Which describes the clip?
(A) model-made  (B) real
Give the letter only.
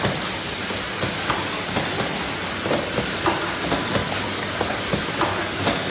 B